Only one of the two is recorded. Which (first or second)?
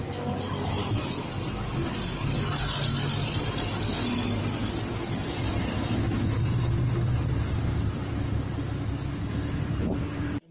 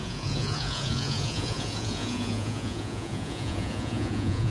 first